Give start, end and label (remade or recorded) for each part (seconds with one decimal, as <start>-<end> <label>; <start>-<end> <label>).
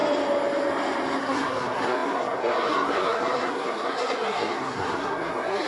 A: 0.0-1.2 recorded; 1.2-5.7 remade